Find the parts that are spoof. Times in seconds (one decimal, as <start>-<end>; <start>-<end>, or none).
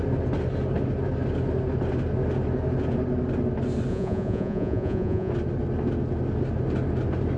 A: 3.9-5.3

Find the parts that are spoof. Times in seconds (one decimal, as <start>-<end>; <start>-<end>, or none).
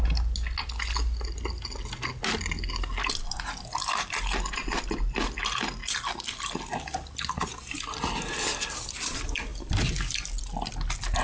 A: none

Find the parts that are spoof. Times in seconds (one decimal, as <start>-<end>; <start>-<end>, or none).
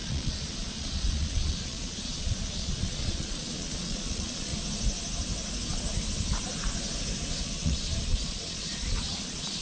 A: 0.0-4.5; 7.4-9.6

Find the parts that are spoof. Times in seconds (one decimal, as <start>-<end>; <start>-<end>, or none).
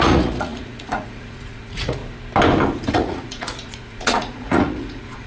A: 0.0-2.0; 2.9-5.3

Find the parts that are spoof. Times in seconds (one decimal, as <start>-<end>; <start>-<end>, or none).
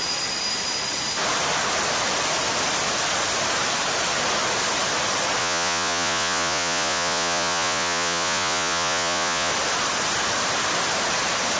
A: 5.4-9.5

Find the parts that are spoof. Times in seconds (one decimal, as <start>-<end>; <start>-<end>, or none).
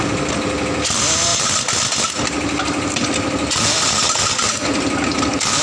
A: none